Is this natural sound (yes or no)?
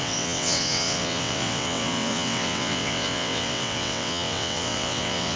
no